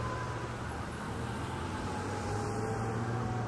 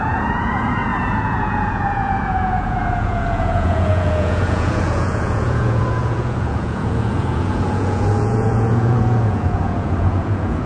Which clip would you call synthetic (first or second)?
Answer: second